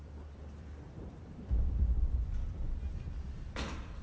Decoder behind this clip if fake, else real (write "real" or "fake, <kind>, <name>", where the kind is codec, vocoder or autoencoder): fake, vocoder, BigVGAN v2